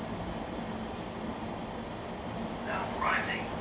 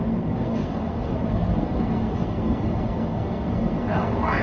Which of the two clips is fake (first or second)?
second